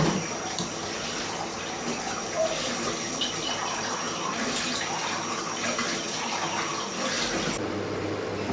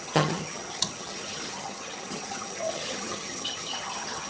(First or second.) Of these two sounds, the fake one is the second